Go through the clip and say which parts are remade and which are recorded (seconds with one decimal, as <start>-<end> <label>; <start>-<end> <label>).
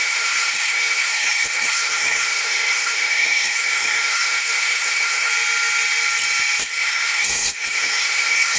0.0-5.3 remade; 5.3-6.6 recorded; 6.6-8.6 remade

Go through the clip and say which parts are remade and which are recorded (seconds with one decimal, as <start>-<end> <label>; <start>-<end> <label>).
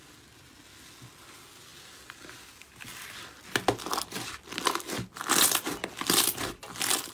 0.0-7.1 recorded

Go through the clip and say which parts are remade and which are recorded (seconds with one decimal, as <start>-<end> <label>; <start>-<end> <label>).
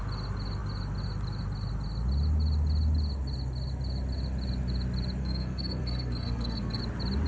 0.0-5.2 recorded; 5.2-6.8 remade; 6.8-7.3 recorded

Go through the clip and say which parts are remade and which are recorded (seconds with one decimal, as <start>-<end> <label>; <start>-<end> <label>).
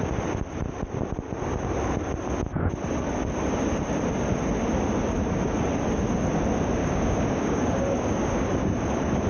0.0-6.8 recorded; 6.8-8.5 remade; 8.5-9.3 recorded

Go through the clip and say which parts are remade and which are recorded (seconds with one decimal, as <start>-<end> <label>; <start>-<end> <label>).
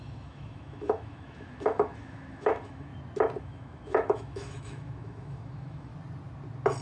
0.0-2.9 remade; 2.9-3.4 recorded; 3.4-5.9 remade; 5.9-6.8 recorded